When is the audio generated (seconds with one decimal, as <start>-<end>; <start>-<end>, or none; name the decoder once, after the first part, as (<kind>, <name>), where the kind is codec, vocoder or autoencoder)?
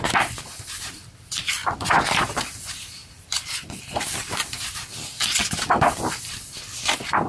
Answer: 0.0-1.6 (vocoder, BigVGAN v2); 2.3-5.4; 6.1-7.3